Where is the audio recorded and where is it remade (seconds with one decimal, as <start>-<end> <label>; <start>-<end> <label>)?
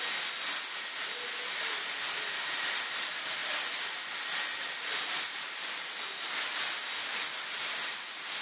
0.0-8.4 recorded